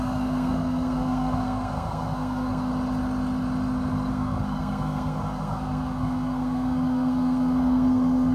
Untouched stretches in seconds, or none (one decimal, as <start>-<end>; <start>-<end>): 2.7-4.1